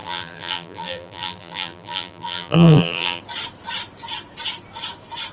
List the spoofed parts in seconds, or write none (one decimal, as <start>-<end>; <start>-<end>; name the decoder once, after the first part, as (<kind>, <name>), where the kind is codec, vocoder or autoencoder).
0.0-3.2 (vocoder, BigVGAN v2)